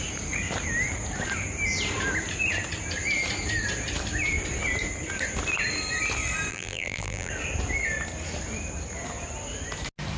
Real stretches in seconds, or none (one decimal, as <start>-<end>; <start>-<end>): 0.0-6.5; 7.3-10.2